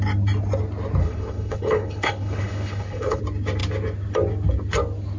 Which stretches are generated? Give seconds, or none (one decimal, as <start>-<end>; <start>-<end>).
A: 1.0-3.2